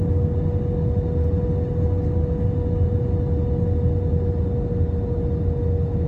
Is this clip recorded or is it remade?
recorded